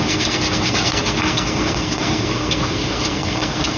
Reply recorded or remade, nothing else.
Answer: remade